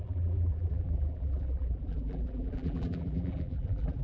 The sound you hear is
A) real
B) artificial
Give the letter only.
B